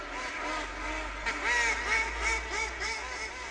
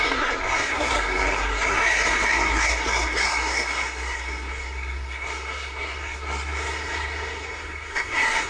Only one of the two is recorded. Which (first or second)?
first